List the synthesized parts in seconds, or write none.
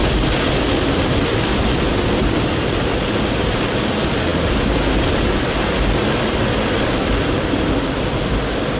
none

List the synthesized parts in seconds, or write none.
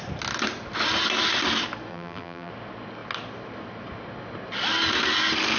1.9-2.5 (vocoder, BigVGAN v2)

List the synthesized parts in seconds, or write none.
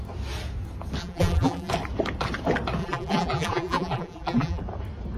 1.0-1.7 (vocoder, BigVGAN v2); 2.8-4.6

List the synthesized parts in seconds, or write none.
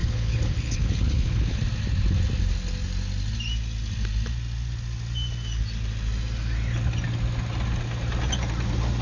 0.0-1.6 (codec, HILCodec)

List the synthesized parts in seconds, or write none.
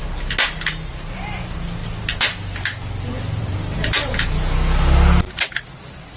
none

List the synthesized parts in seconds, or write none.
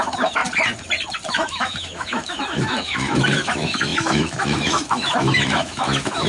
0.0-0.4 (autoencoder, DAC-VAE); 1.3-6.3